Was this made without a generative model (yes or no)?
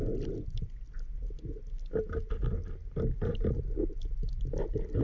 yes